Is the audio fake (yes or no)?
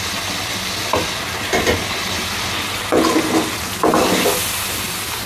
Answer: no